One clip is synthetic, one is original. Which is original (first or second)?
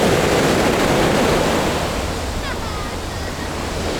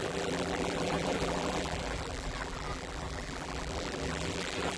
first